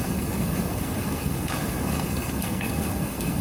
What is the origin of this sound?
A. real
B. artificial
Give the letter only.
B